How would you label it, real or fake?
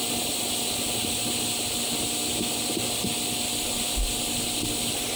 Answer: real